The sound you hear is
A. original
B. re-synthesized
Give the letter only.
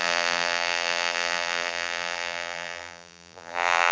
B